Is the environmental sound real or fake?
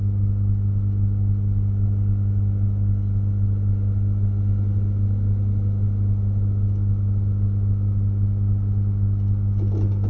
real